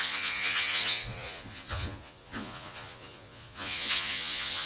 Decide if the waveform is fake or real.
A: fake